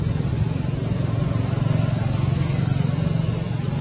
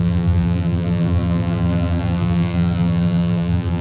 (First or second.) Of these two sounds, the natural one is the first